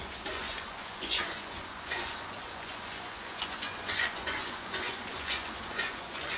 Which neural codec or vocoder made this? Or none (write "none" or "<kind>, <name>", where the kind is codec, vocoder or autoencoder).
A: vocoder, Vocos